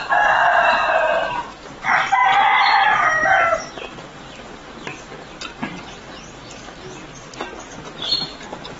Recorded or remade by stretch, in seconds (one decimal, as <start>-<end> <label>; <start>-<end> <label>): 0.0-0.5 remade; 0.5-1.3 recorded; 1.3-2.2 remade; 2.2-2.8 recorded; 2.8-3.2 remade; 3.2-3.7 recorded; 3.7-8.8 remade